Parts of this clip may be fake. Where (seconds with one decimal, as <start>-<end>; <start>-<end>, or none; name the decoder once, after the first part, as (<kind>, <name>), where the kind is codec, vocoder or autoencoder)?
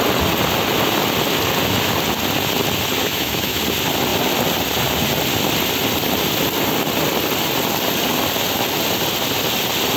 3.0-3.6 (autoencoder, DAC-VAE)